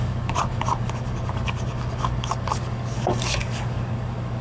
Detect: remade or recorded remade